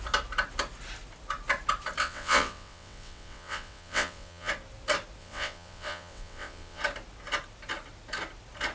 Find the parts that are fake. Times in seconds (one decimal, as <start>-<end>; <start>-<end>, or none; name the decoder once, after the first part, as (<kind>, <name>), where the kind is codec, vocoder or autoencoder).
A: 2.0-4.5 (vocoder, WaveNeXt); 5.2-6.8